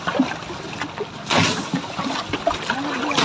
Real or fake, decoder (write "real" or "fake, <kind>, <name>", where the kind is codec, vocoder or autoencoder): real